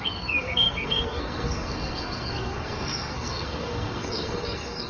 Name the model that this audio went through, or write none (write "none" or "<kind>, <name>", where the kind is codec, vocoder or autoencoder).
codec, SNAC